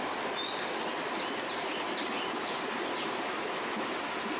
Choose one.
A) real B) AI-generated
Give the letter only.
A